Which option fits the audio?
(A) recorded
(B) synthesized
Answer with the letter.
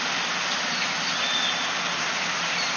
A